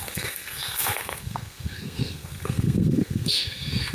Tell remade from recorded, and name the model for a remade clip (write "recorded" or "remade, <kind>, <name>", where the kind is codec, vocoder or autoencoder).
remade, codec, SNAC